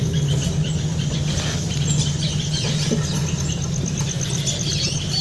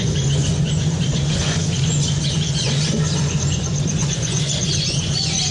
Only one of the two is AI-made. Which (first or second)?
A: second